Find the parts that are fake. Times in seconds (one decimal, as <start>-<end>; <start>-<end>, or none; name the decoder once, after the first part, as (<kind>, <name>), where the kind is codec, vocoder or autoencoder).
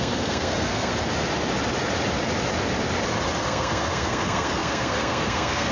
0.0-0.9 (codec, SNAC); 3.4-5.7